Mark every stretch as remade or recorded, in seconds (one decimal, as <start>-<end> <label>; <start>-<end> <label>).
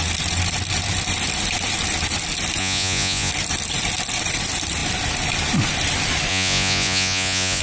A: 0.0-2.6 recorded; 2.6-3.3 remade; 3.3-6.3 recorded; 6.3-7.6 remade